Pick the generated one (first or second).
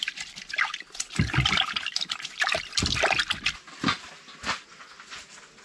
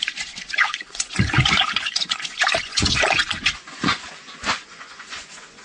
second